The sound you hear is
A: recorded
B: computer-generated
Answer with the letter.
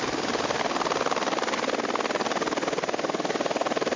A